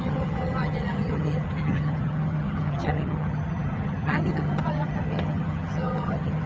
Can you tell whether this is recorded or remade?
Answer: remade